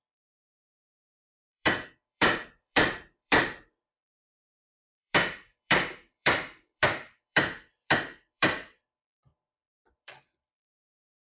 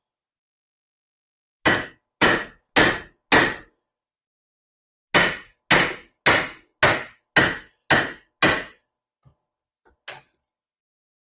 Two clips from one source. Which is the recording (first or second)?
second